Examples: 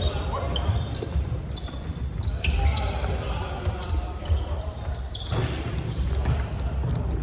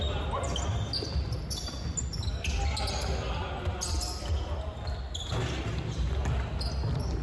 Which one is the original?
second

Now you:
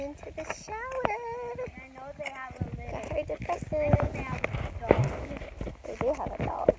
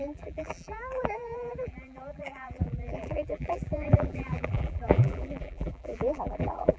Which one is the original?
first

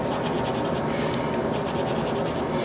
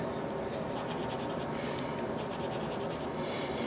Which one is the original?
first